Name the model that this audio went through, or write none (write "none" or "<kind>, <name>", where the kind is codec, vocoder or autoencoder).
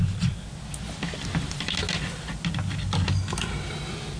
none